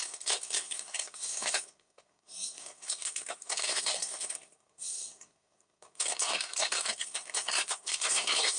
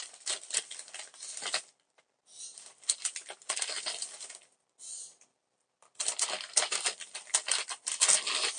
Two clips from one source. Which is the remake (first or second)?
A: first